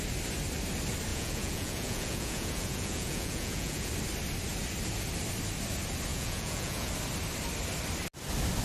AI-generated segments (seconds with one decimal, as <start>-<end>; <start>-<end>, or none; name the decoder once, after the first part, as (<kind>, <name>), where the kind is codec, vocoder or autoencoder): 1.1-3.9 (vocoder, Vocos); 6.1-6.9

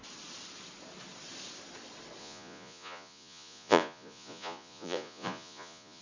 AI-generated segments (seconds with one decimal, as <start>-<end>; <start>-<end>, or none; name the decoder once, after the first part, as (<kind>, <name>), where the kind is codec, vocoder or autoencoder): 2.2-6.0 (vocoder, Vocos)

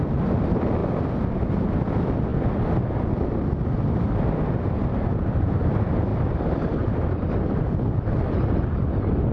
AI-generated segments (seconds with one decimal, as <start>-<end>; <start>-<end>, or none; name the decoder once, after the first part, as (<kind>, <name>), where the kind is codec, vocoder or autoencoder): none

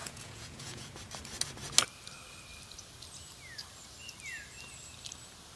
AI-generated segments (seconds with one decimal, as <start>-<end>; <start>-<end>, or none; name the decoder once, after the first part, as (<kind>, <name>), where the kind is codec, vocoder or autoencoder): 0.0-0.9 (vocoder, Vocos)